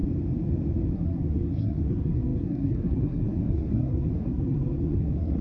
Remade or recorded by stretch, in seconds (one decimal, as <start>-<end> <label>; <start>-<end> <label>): 0.0-0.9 recorded; 0.9-5.4 remade

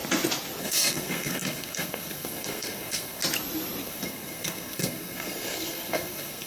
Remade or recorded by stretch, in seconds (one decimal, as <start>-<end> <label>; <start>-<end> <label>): 0.0-0.6 recorded; 0.6-3.2 remade; 3.2-3.8 recorded; 3.8-6.5 remade

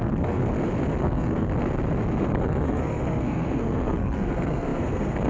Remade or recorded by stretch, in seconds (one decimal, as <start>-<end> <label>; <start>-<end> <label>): 0.0-0.4 remade; 0.4-1.0 recorded; 1.0-1.5 remade; 1.5-2.2 recorded; 2.2-5.3 remade

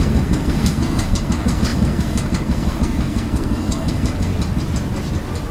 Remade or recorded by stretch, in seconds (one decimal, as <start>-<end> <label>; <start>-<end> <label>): 0.0-4.3 remade; 4.3-5.5 recorded

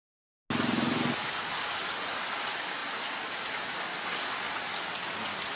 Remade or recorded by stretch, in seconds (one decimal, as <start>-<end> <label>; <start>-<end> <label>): 0.0-5.6 recorded

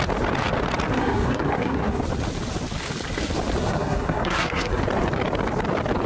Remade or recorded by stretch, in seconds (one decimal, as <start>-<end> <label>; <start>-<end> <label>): 0.0-0.9 recorded; 0.9-2.0 remade; 2.0-3.6 recorded; 3.6-4.8 remade; 4.8-6.1 recorded

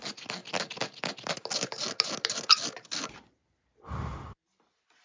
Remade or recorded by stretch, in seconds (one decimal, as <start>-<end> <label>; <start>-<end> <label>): 0.0-5.0 recorded